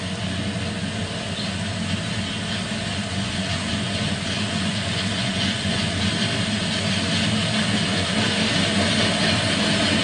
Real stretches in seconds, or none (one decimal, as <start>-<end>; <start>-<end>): 0.0-2.9; 5.9-10.0